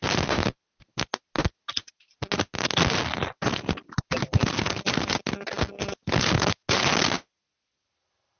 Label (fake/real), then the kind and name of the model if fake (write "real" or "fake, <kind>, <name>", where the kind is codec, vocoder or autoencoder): real